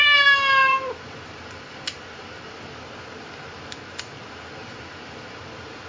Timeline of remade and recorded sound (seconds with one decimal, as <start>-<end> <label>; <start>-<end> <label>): 0.0-0.6 recorded; 0.6-2.7 remade; 2.7-4.6 recorded; 4.6-5.5 remade; 5.5-5.9 recorded

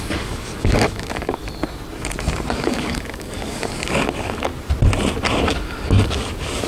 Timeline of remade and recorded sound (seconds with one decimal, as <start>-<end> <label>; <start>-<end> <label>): 0.0-1.4 remade; 1.4-2.5 recorded; 2.5-4.5 remade; 4.5-5.4 recorded; 5.4-6.7 remade

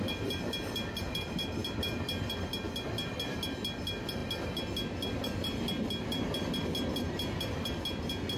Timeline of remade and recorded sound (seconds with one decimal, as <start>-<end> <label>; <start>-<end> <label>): 0.0-8.4 recorded

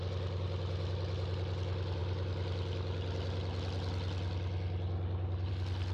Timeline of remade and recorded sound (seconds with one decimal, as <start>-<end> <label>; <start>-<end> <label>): 0.0-5.9 recorded

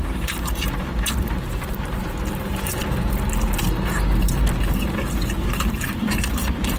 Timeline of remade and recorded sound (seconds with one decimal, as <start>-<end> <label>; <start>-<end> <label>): 0.0-2.8 remade; 2.8-3.6 recorded; 3.6-6.8 remade